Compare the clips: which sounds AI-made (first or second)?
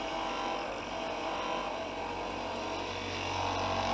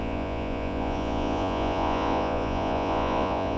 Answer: second